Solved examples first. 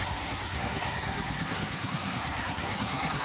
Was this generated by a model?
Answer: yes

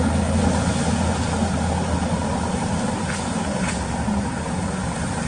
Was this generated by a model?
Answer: no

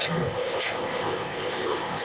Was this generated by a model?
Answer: yes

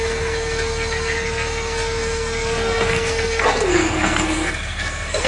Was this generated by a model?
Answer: yes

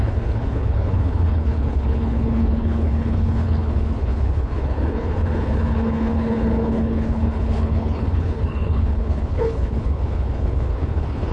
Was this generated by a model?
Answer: yes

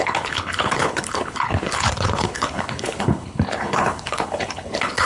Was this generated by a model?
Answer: yes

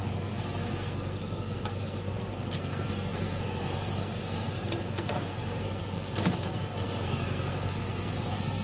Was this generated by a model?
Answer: yes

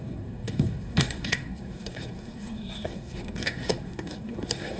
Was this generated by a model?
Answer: yes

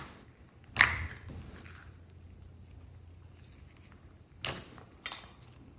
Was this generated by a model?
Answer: no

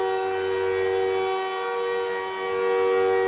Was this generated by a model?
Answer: no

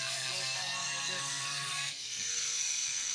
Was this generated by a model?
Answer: yes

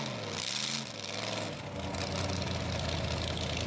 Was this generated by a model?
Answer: no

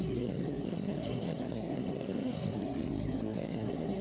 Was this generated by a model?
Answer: yes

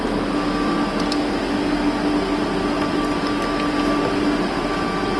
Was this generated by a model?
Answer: no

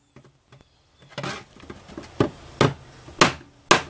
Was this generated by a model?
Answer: no